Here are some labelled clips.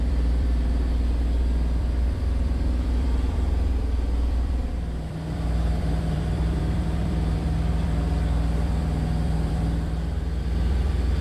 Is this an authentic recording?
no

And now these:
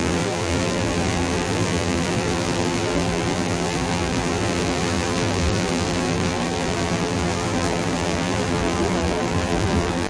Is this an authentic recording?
no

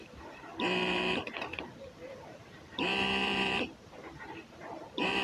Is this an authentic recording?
no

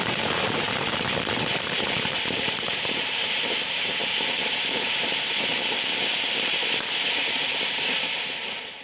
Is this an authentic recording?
no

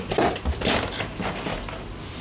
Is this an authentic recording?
no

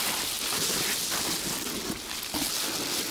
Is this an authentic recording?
yes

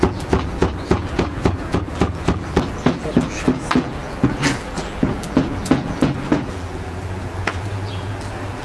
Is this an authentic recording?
no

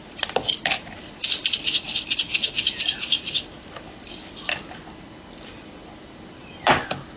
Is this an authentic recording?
yes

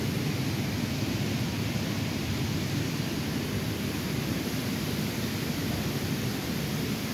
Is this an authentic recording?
no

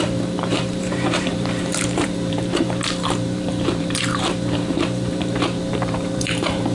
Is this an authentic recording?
no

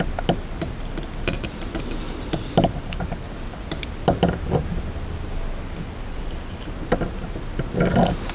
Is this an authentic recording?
yes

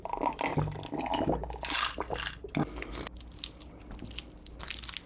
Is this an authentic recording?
yes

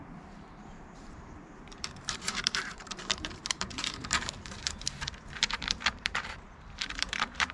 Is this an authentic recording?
no